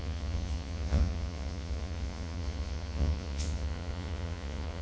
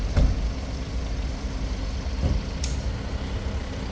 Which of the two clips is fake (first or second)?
first